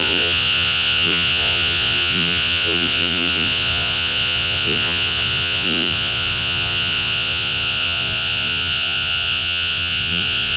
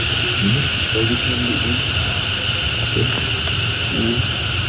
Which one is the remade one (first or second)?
first